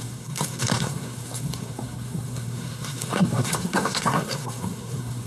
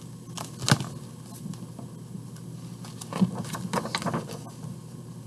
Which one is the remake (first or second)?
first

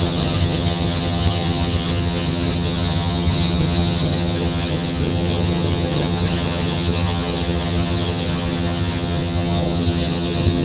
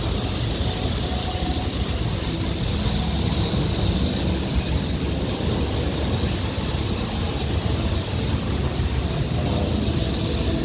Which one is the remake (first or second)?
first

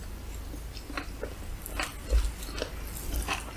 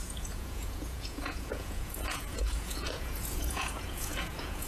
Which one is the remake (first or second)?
second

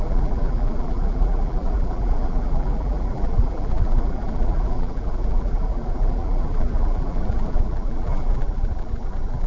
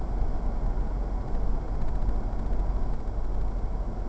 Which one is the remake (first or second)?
first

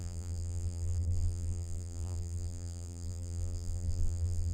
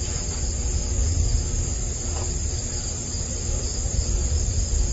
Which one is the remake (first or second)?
first